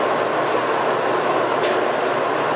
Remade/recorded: recorded